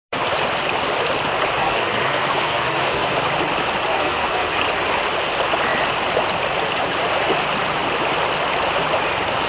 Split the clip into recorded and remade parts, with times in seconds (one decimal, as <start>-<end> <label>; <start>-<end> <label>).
0.0-1.6 recorded; 1.6-3.1 remade; 3.1-3.9 recorded; 3.9-4.6 remade; 4.6-9.5 recorded

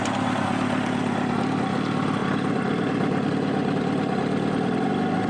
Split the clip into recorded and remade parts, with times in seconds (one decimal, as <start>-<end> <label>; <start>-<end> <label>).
0.0-5.3 recorded

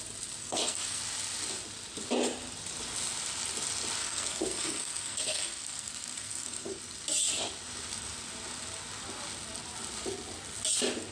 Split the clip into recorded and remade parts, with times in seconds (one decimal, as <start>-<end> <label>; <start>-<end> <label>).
0.0-0.4 recorded; 0.4-1.0 remade; 1.0-4.0 recorded; 4.0-6.8 remade; 6.8-11.1 recorded

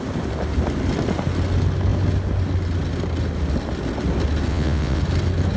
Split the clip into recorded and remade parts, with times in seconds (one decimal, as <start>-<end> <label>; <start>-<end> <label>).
0.0-4.5 recorded; 4.5-5.0 remade; 5.0-5.6 recorded

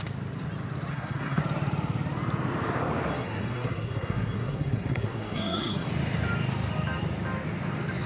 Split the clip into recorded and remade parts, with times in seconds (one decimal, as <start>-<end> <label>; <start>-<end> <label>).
0.0-0.9 recorded; 0.9-1.4 remade; 1.4-3.1 recorded; 3.1-5.9 remade; 5.9-8.1 recorded

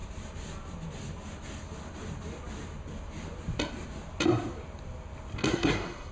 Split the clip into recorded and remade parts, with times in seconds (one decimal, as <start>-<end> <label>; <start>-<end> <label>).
0.0-5.5 recorded; 5.5-6.1 remade

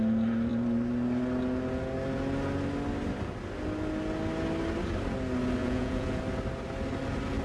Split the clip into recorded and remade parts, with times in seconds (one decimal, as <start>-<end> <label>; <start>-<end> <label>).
0.0-5.6 recorded; 5.6-6.2 remade; 6.2-7.4 recorded

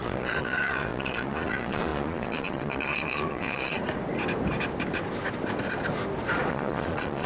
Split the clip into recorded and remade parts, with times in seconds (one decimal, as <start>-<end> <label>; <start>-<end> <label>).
0.0-3.8 remade; 3.8-6.5 recorded; 6.5-7.3 remade